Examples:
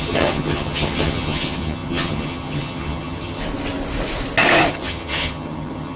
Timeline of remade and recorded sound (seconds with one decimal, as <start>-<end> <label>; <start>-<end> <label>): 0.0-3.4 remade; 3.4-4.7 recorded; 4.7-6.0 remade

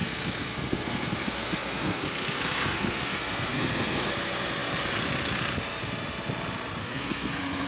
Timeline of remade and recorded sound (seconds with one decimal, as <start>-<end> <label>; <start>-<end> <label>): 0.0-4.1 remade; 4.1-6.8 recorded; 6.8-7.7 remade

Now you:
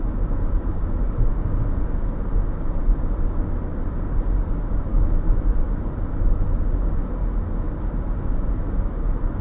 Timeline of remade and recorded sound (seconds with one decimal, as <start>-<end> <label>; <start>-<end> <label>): 0.0-9.4 recorded

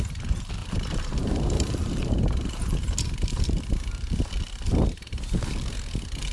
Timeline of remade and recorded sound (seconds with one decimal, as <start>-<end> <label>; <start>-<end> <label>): 0.0-0.6 recorded; 0.6-3.9 remade; 3.9-6.3 recorded

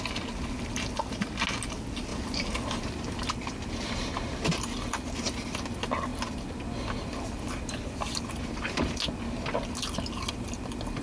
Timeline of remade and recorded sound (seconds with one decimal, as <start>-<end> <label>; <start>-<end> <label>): 0.0-2.1 recorded; 2.1-3.3 remade; 3.3-11.0 recorded

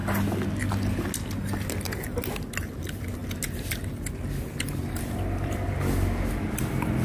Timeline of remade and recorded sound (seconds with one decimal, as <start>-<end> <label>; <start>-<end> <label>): 0.0-7.0 recorded

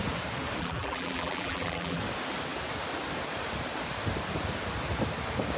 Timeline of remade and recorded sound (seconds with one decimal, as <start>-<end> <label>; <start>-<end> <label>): 0.0-0.6 recorded; 0.6-2.0 remade; 2.0-5.6 recorded